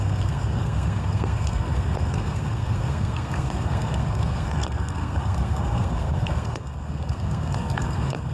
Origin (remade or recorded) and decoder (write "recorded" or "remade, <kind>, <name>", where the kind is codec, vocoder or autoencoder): remade, codec, SNAC